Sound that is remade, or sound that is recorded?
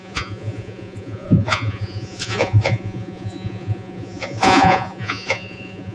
remade